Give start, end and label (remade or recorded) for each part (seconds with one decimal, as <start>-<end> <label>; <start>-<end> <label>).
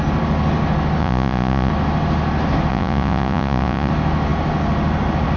0.0-1.0 recorded; 1.0-1.7 remade; 1.7-2.7 recorded; 2.7-3.9 remade; 3.9-5.4 recorded